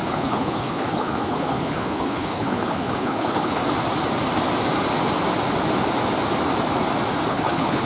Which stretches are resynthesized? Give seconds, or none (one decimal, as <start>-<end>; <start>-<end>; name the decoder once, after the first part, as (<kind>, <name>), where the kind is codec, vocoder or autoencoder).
0.0-3.6 (codec, HILCodec); 7.3-7.9